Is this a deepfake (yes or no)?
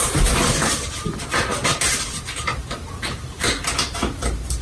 no